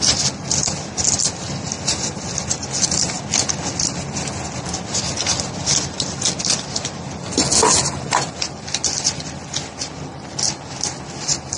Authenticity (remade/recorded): recorded